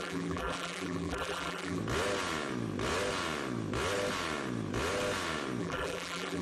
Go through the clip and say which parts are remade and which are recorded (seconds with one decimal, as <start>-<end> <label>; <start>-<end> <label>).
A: 0.0-1.8 remade; 1.8-5.6 recorded; 5.6-6.4 remade